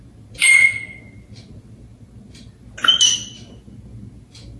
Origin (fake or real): real